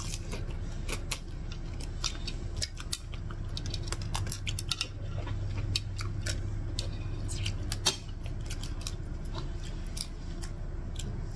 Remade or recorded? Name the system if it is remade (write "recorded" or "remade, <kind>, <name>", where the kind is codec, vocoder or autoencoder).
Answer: recorded